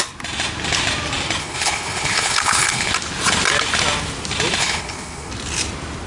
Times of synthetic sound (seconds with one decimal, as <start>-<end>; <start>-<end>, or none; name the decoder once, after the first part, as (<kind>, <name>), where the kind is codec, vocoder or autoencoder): 1.4-2.9 (codec, HILCodec); 4.6-5.3